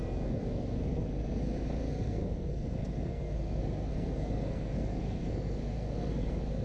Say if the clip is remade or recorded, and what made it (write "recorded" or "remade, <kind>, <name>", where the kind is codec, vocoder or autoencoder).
remade, codec, SNAC